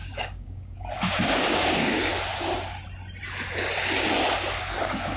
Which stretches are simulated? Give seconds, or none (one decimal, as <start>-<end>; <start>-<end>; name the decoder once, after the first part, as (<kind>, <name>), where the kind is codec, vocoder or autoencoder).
0.0-2.1 (codec, DAC); 4.6-5.2